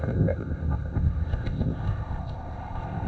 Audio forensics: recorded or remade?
remade